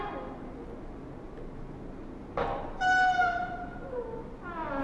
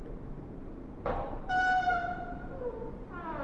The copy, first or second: second